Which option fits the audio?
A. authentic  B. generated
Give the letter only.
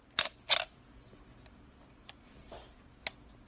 A